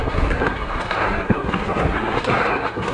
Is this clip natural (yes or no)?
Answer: no